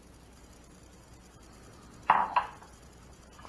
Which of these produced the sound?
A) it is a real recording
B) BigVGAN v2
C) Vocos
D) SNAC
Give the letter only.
A